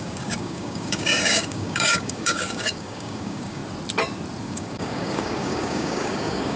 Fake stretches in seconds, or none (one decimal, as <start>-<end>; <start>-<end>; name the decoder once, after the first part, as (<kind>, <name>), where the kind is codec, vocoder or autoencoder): 0.0-3.6 (codec, DAC); 4.4-6.6